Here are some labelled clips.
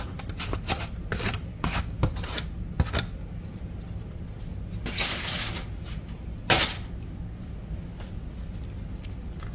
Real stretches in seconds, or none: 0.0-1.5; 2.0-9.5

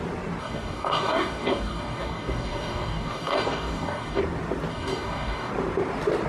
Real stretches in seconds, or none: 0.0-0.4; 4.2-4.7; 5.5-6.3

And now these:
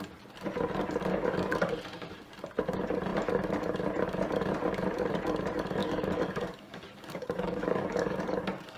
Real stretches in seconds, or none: 0.0-1.1; 1.7-5.8

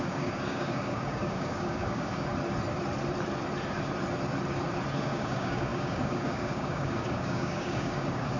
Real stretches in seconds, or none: 2.3-5.0

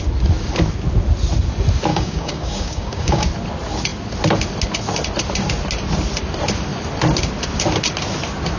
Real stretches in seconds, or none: 0.0-1.9; 3.3-8.6